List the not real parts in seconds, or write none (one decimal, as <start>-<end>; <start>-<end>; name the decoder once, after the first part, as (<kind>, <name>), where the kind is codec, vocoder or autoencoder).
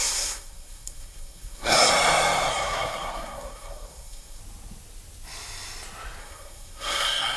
0.0-1.9 (codec, SNAC); 2.5-4.4; 6.2-7.4